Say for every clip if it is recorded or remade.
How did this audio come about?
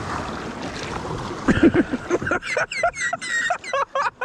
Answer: recorded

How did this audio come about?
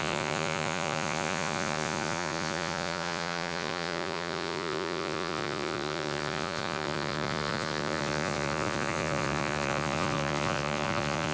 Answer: remade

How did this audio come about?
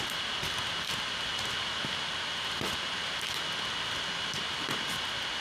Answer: recorded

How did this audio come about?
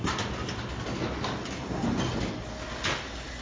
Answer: recorded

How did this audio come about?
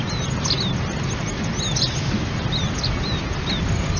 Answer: recorded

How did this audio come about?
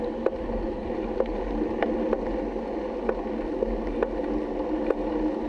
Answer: recorded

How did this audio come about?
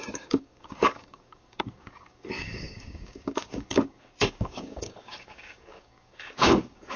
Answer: remade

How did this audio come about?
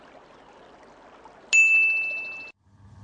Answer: recorded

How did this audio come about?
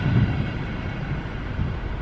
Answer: recorded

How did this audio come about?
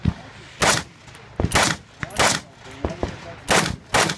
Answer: recorded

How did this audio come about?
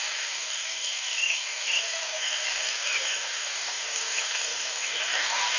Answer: remade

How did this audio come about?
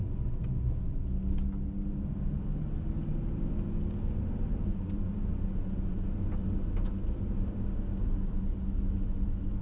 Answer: recorded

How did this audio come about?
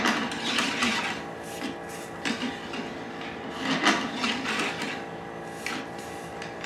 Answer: recorded